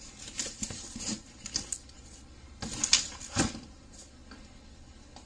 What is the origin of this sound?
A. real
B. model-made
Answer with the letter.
A